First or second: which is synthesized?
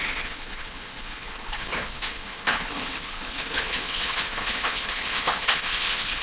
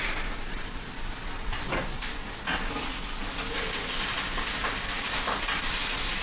first